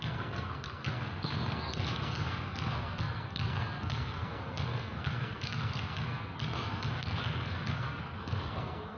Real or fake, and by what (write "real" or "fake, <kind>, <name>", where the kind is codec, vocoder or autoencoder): fake, codec, SNAC